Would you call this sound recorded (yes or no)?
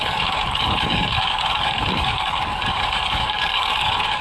no